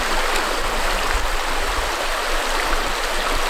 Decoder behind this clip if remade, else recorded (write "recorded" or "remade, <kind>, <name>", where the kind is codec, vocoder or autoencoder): recorded